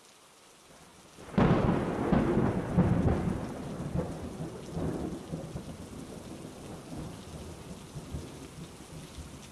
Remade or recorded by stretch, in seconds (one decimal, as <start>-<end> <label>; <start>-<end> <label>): 0.0-9.5 recorded